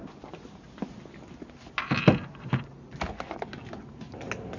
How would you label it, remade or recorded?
recorded